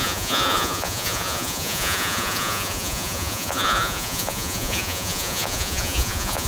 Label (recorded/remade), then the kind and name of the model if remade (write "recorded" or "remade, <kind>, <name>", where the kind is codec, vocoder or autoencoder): remade, vocoder, Vocos